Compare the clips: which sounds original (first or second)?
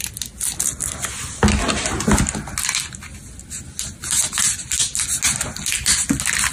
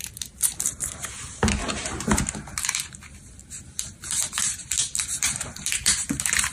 first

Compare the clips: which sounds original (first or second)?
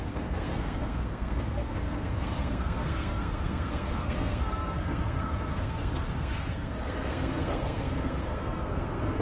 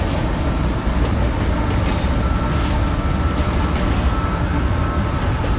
second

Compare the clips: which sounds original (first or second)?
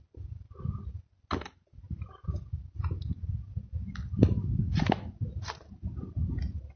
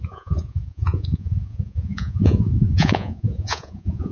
first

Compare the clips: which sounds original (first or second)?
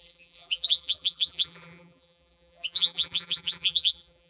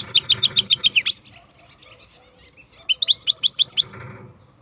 second